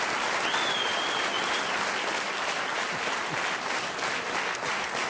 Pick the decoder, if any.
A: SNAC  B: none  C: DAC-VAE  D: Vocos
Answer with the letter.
B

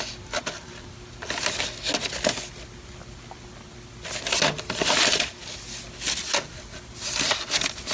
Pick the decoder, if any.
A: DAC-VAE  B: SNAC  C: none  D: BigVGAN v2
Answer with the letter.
C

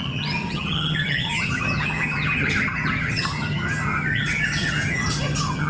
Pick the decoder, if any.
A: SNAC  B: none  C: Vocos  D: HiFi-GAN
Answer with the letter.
D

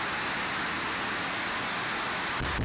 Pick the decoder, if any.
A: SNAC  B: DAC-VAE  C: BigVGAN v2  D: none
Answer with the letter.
D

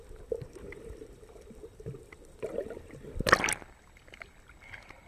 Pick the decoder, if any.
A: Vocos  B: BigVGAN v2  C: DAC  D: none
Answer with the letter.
B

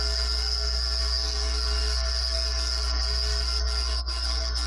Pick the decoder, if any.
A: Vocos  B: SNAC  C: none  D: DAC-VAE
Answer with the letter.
B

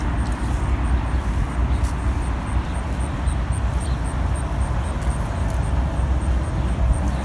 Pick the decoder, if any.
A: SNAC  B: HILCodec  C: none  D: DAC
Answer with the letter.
C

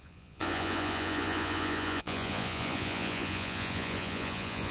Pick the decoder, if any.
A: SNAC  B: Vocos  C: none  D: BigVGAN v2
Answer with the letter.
B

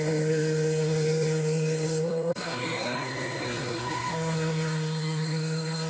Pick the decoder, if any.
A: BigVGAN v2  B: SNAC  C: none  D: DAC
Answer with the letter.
B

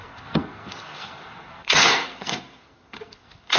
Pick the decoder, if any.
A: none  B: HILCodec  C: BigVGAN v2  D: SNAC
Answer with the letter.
D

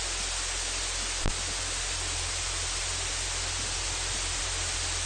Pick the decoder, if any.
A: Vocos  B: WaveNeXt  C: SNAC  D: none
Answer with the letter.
D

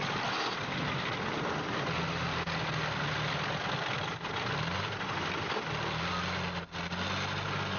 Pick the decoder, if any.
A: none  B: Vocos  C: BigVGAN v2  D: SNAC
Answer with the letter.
A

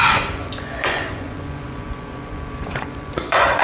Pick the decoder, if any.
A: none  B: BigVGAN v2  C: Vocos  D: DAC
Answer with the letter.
C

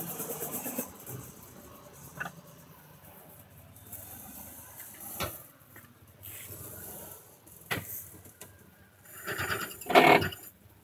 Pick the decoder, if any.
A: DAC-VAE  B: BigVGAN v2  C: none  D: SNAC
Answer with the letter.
C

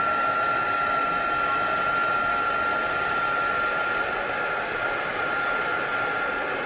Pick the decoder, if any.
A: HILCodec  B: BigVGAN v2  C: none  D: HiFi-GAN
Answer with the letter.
C